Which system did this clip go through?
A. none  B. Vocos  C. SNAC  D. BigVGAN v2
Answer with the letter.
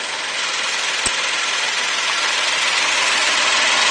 A